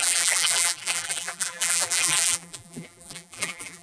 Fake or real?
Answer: fake